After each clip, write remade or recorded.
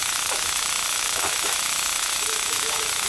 remade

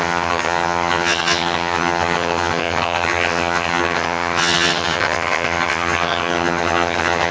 remade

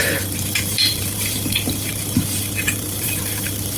remade